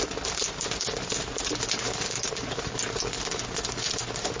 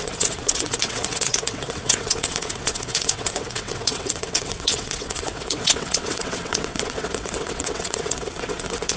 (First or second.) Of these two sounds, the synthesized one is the second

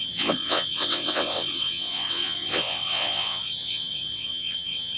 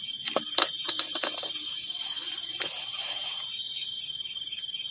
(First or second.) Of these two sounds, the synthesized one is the first